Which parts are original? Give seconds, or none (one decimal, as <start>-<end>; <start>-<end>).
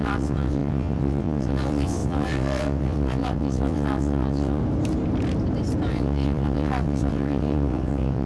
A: 4.6-5.9